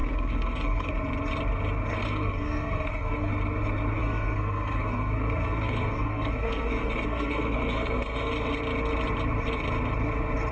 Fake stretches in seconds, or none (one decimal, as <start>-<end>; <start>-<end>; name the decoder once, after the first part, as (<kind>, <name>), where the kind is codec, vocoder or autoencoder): 0.0-0.9 (codec, SNAC); 2.0-3.3; 4.0-8.3